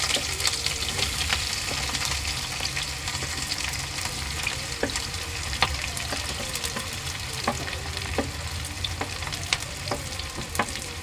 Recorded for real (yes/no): no